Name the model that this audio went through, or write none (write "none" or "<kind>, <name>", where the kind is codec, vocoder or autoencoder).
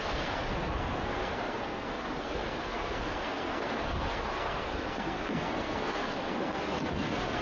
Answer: codec, SNAC